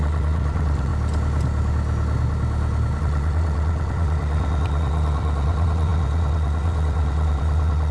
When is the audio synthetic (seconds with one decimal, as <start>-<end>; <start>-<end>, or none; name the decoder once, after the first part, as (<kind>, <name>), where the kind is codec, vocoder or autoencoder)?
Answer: 0.0-0.9 (vocoder, WaveNeXt); 3.0-7.9